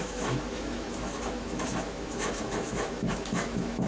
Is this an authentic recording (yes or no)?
no